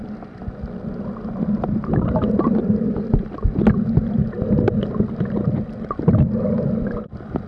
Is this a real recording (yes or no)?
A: yes